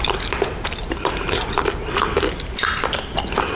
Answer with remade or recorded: recorded